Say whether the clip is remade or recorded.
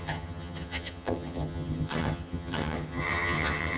remade